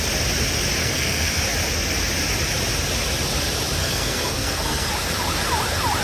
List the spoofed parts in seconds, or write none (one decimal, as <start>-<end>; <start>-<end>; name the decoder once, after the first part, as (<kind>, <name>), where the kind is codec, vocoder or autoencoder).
0.8-1.4 (codec, SNAC); 3.8-4.9